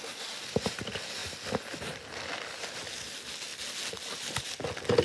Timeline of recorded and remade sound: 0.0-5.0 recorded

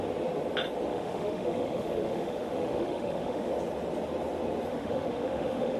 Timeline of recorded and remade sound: 0.0-0.9 recorded; 0.9-3.5 remade; 3.5-4.7 recorded; 4.7-5.8 remade

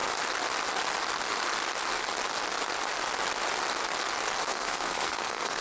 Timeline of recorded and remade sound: 0.0-4.4 recorded; 4.4-5.6 remade

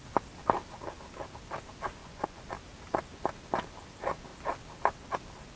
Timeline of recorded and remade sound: 0.0-2.0 recorded; 2.0-2.5 remade; 2.5-5.6 recorded

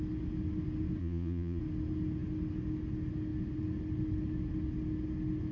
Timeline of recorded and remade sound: 0.0-1.0 recorded; 1.0-1.6 remade; 1.6-5.5 recorded

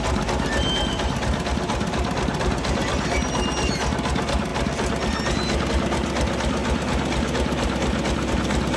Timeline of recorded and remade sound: 0.0-8.8 recorded

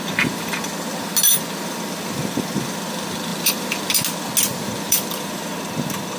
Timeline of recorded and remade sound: 0.0-3.3 recorded; 3.3-3.9 remade; 3.9-4.5 recorded; 4.5-6.2 remade

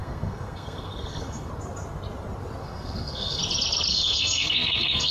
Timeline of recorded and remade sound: 0.0-1.5 remade; 1.5-2.6 recorded; 2.6-3.4 remade; 3.4-3.9 recorded; 3.9-5.1 remade